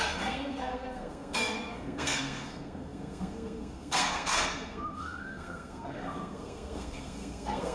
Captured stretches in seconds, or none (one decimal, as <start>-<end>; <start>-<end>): none